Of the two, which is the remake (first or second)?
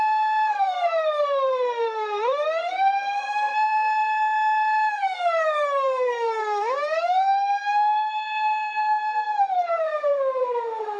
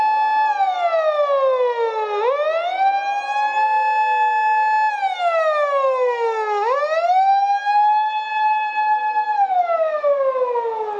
first